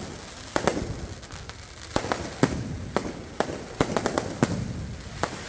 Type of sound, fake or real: real